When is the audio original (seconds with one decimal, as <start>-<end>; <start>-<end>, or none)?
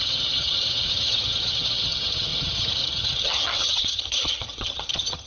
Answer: none